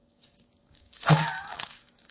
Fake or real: fake